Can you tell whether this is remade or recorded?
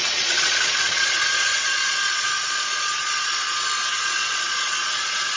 remade